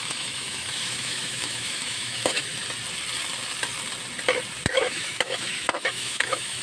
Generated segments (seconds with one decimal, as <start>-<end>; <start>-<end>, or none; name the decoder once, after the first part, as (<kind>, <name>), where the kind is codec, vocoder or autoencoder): 0.0-2.5 (autoencoder, DAC-VAE); 4.7-6.6